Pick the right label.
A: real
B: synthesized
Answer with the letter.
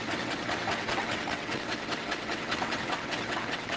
B